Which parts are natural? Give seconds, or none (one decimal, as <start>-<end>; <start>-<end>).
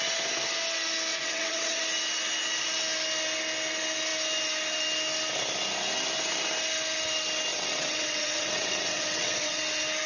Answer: 0.0-1.1; 1.8-7.5; 9.6-10.1